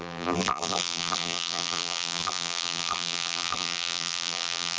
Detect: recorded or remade remade